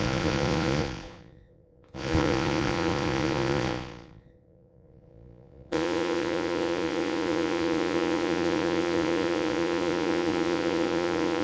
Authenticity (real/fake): fake